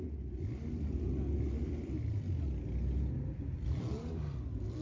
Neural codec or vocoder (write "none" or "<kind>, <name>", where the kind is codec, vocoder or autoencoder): none